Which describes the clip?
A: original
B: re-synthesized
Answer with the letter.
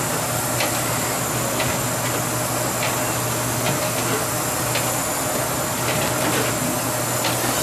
A